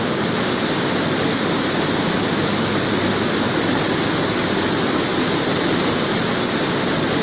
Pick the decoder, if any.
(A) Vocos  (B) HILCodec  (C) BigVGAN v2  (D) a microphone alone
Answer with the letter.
D